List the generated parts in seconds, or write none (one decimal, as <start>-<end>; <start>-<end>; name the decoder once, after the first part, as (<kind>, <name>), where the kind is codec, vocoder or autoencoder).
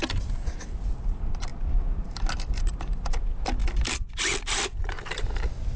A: none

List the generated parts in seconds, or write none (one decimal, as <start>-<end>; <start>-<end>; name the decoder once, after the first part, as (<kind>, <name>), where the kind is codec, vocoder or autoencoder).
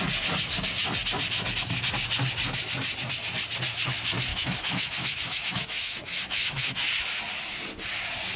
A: 4.3-6.9 (autoencoder, DAC-VAE)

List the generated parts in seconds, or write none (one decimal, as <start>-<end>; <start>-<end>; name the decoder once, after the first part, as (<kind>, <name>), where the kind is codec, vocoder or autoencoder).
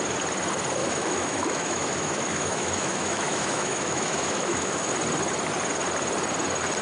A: 0.8-4.9 (autoencoder, DAC-VAE)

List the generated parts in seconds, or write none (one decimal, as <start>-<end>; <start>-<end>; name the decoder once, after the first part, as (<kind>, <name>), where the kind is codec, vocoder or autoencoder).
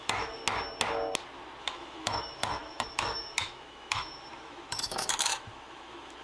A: 0.0-0.4 (autoencoder, DAC-VAE); 1.6-6.2